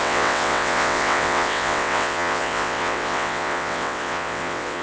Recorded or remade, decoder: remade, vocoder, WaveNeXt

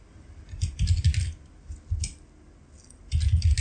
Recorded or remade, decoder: recorded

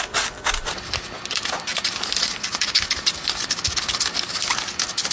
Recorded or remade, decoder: recorded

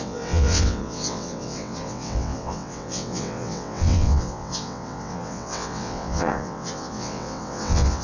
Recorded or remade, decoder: remade, vocoder, WaveNeXt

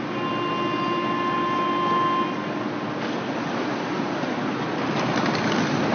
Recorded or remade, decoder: recorded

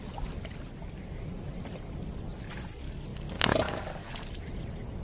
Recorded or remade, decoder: recorded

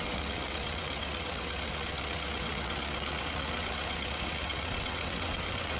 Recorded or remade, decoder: remade, vocoder, WaveNeXt